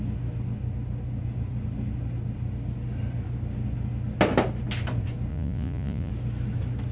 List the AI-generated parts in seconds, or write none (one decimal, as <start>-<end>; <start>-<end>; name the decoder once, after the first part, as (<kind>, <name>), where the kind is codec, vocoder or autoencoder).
5.3-6.1 (vocoder, Vocos)